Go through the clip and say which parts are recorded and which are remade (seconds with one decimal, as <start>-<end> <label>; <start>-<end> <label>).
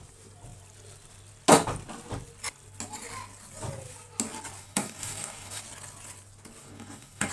0.0-4.6 recorded; 4.6-5.6 remade; 5.6-6.6 recorded; 6.6-7.3 remade